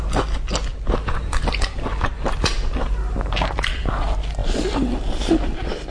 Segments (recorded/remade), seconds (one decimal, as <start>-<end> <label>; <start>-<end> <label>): 0.0-0.7 recorded; 0.7-1.5 remade; 1.5-1.9 recorded; 1.9-4.0 remade; 4.0-4.4 recorded; 4.4-5.9 remade